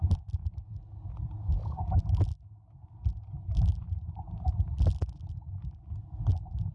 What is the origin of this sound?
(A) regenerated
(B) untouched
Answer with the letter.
B